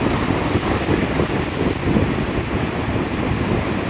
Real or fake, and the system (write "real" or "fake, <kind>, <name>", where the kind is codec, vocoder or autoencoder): real